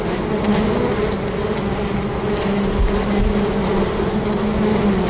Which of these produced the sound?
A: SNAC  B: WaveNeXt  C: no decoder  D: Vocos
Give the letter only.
C